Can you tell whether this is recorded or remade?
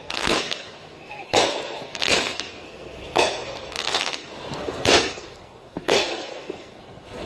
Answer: remade